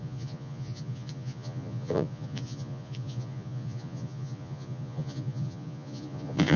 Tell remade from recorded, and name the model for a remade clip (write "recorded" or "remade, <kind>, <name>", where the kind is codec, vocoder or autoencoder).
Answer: remade, vocoder, Vocos